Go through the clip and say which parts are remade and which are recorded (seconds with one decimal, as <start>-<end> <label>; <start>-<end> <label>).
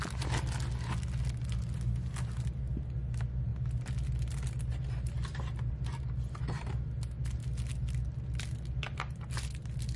0.0-10.0 recorded